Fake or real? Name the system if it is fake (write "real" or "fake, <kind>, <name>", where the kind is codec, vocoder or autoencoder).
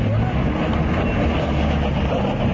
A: real